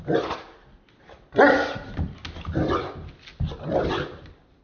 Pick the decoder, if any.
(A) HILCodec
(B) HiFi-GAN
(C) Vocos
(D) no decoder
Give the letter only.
D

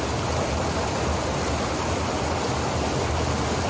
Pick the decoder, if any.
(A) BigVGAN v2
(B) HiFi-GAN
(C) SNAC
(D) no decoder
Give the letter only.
D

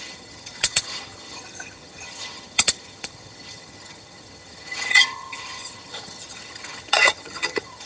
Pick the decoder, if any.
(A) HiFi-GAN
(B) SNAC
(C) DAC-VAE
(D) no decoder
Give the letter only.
A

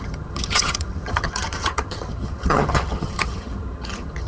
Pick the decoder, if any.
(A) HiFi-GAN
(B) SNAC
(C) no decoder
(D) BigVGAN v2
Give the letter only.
A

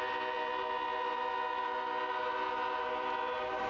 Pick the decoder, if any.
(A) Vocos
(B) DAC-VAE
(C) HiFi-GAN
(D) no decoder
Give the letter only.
D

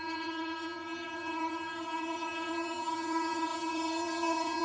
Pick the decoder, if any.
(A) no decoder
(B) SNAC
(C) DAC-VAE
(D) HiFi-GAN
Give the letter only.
D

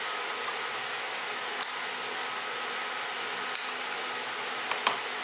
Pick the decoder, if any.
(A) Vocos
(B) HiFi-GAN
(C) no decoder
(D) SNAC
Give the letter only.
C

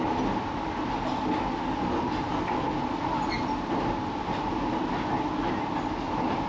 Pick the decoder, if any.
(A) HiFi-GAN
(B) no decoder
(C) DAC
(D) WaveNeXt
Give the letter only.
B